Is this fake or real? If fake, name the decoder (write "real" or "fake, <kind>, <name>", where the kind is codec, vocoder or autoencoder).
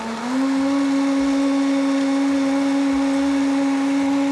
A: real